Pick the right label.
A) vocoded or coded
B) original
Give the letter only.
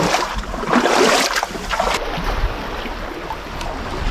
B